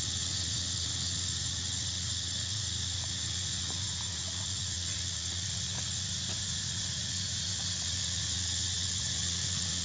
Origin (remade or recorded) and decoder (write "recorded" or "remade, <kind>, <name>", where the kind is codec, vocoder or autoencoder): remade, vocoder, Vocos